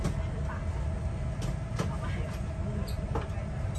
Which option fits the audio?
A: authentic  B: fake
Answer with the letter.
A